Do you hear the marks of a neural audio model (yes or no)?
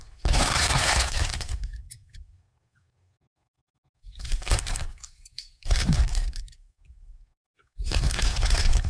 yes